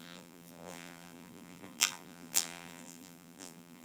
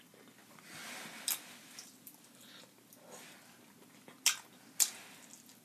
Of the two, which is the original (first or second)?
second